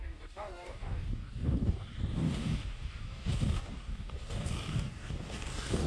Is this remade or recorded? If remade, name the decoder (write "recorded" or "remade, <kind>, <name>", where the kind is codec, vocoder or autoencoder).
remade, codec, DAC